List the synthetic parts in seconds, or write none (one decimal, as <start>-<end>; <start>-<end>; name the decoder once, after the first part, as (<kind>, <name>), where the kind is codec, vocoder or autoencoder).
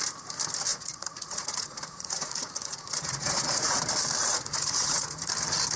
0.7-3.8 (vocoder, Vocos); 4.2-5.3